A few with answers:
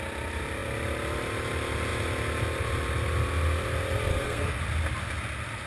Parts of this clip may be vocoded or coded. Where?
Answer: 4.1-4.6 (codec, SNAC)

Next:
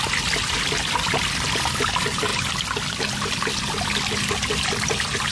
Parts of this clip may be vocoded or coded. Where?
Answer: none